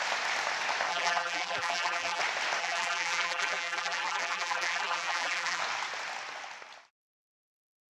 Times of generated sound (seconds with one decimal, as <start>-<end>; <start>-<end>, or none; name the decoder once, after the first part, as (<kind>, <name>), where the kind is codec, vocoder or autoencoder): 0.9-2.2 (vocoder, BigVGAN v2); 2.6-5.6